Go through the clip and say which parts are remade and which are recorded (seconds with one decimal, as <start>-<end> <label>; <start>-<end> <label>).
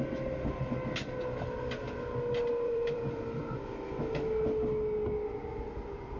0.0-2.4 recorded; 2.4-3.5 remade; 3.5-6.2 recorded